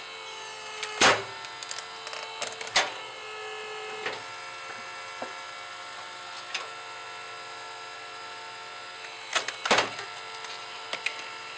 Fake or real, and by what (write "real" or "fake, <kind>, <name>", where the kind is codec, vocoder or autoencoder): real